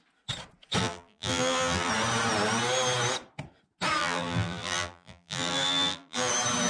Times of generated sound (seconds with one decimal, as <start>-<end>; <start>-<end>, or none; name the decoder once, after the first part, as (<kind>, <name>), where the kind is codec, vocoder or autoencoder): 0.8-1.9 (vocoder, BigVGAN v2); 4.0-6.3